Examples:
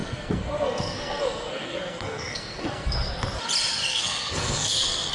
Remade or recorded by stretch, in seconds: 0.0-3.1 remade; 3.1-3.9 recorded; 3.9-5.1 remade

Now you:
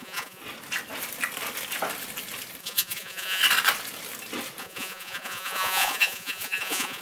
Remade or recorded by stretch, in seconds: 0.0-0.4 remade; 0.4-2.6 recorded; 2.6-3.4 remade; 3.4-4.6 recorded; 4.6-7.0 remade

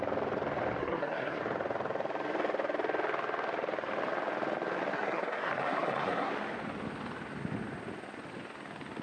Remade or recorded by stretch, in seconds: 0.0-0.8 recorded; 0.8-1.4 remade; 1.4-4.9 recorded; 4.9-6.3 remade; 6.3-9.0 recorded

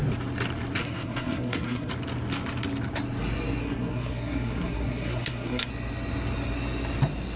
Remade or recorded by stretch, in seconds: 0.0-0.8 recorded; 0.8-1.9 remade; 1.9-3.6 recorded; 3.6-5.7 remade; 5.7-7.4 recorded

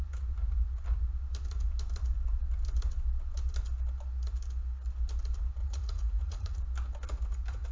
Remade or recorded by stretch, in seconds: 0.0-5.6 recorded; 5.6-6.6 remade; 6.6-7.7 recorded

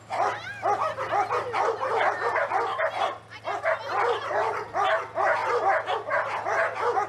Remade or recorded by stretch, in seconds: 0.0-7.1 recorded

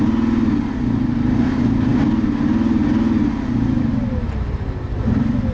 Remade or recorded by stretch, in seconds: 0.0-5.5 recorded

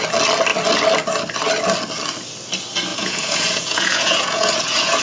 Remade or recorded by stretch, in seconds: 0.0-2.9 recorded; 2.9-5.0 remade